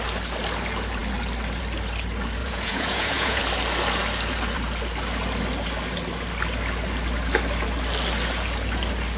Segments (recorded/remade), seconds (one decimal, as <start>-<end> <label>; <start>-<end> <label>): 0.0-2.4 recorded; 2.4-3.4 remade; 3.4-9.2 recorded